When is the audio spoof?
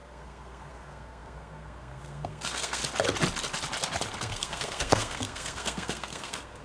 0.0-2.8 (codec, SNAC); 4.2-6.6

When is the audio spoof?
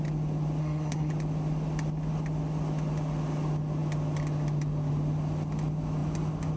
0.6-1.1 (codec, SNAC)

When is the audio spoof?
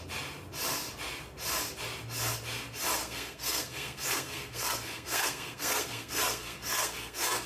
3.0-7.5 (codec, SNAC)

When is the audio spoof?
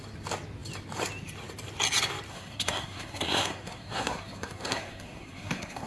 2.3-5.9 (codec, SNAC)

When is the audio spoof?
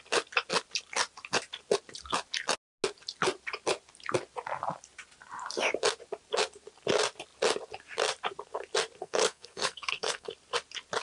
9.0-10.3 (codec, SNAC)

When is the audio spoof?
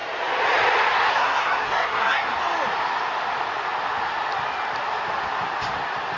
1.1-2.3 (codec, SNAC)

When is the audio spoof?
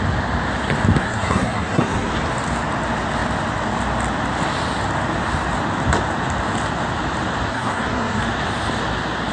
1.0-2.1 (codec, SNAC); 7.5-8.2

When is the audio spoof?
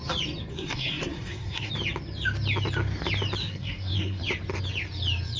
0.5-1.7 (codec, SNAC); 3.4-4.2